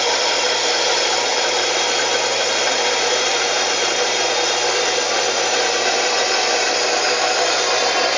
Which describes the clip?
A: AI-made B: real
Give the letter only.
B